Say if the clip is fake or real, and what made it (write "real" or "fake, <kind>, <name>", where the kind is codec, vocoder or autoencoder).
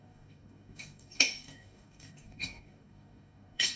fake, codec, DAC